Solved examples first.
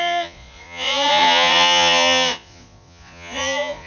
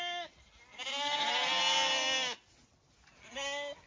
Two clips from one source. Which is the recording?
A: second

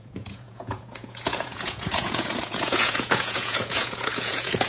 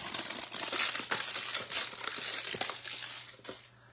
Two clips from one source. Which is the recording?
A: second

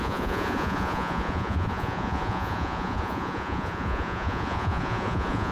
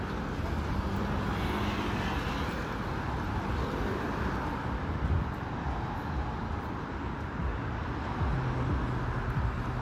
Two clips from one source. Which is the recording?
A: second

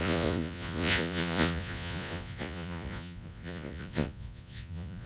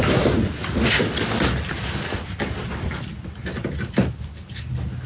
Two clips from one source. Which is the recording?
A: second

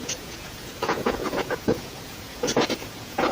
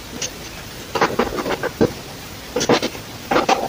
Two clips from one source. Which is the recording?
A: second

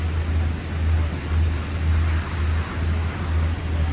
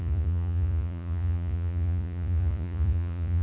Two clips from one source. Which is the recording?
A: first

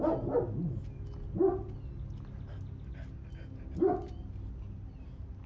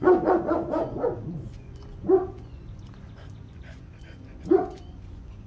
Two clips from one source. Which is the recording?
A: first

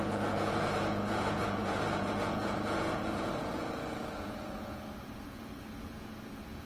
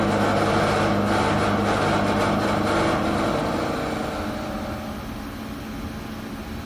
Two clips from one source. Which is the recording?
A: second